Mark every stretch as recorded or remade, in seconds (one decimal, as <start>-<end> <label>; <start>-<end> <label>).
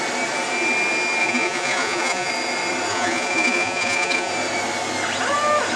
0.0-1.2 recorded; 1.2-2.3 remade; 2.3-2.9 recorded; 2.9-4.3 remade; 4.3-5.8 recorded